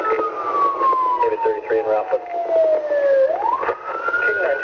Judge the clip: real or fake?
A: real